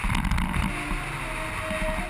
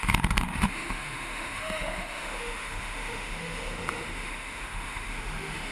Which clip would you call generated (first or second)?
second